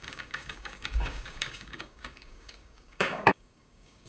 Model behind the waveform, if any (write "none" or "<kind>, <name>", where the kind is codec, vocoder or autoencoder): codec, DAC